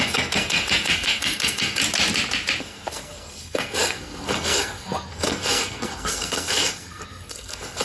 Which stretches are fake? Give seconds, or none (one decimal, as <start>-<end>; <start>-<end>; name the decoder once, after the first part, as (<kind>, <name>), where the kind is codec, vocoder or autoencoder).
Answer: 0.0-1.8 (codec, SNAC); 2.6-7.8